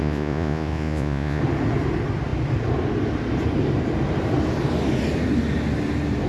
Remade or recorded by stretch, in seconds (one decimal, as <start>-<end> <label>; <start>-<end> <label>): 0.0-1.4 remade; 1.4-6.3 recorded